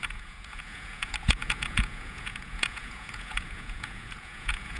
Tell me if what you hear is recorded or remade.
remade